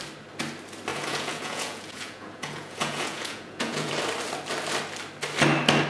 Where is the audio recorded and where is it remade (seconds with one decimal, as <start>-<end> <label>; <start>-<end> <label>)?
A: 0.0-0.9 recorded; 0.9-3.9 remade; 3.9-5.9 recorded